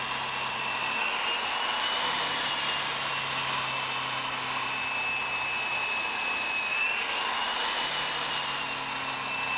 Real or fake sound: real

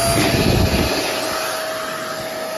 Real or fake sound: real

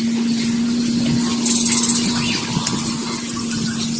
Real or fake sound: real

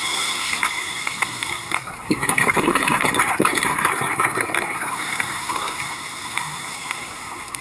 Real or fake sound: fake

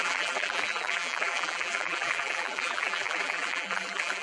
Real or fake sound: fake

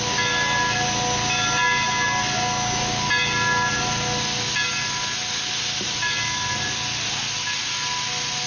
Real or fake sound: real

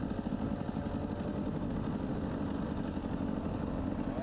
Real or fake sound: real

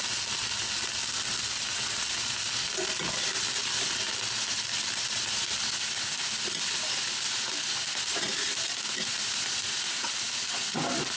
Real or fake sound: real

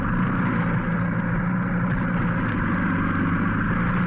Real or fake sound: real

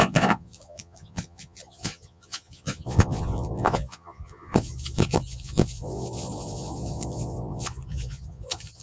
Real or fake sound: fake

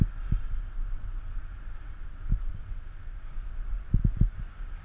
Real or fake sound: real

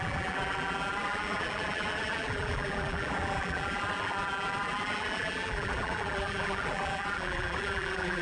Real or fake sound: fake